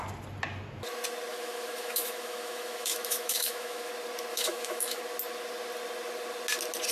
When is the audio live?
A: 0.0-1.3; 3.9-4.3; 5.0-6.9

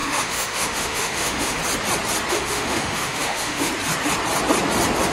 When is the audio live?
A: 1.6-2.3; 3.7-5.1

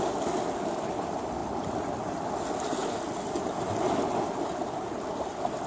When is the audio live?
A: 0.0-5.7